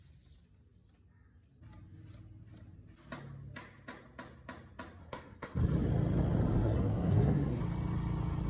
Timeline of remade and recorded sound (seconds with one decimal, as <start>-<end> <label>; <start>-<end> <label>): 0.0-5.0 recorded; 5.0-5.6 remade; 5.6-6.5 recorded; 6.5-7.6 remade; 7.6-8.5 recorded